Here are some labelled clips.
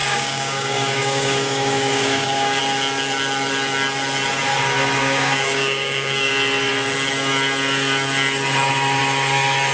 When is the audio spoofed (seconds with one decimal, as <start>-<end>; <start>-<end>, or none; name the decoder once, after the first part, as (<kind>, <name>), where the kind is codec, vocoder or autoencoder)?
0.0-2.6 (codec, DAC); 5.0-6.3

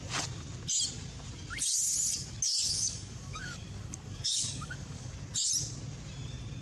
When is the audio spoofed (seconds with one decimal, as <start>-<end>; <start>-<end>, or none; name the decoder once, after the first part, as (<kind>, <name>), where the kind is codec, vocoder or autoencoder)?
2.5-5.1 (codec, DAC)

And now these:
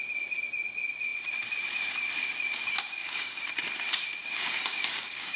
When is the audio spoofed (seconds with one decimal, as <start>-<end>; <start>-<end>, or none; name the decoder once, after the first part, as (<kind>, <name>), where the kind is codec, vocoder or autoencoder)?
2.6-3.5 (codec, DAC); 4.2-5.4